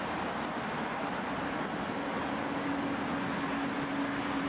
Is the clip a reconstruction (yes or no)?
no